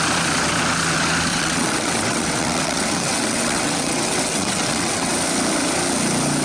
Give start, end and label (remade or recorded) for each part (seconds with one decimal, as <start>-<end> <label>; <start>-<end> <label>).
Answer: 0.0-1.3 recorded; 1.3-5.1 remade; 5.1-6.4 recorded